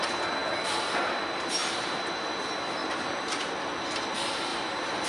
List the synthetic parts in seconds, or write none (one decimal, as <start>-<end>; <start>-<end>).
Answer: 1.6-2.2; 2.8-3.5; 4.5-5.1